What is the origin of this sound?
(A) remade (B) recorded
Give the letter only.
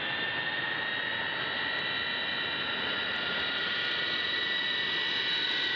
B